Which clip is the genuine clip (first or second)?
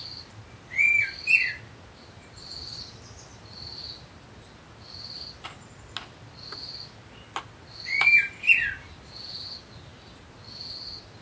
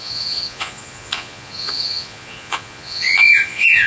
first